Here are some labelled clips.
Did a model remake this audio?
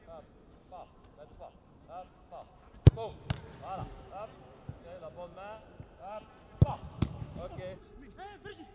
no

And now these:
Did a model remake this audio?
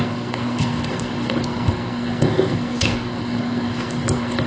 yes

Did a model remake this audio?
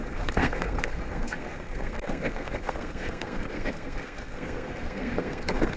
yes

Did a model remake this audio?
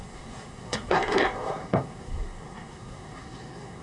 yes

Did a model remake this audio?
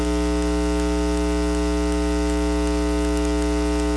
no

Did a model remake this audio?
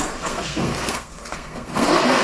yes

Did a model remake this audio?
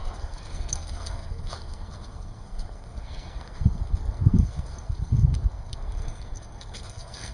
yes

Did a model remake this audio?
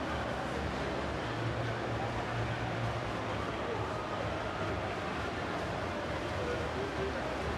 no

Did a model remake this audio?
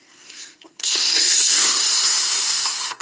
yes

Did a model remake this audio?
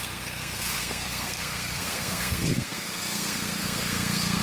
yes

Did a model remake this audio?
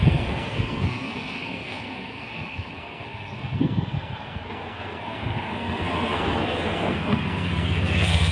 yes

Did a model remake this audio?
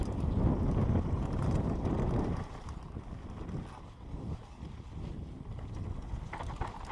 no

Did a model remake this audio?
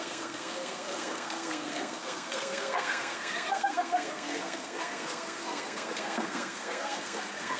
yes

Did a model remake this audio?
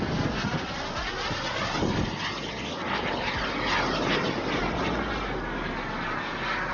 no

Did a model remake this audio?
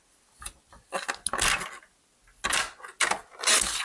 no